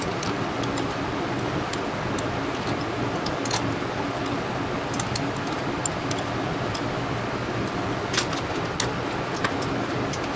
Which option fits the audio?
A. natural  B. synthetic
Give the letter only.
A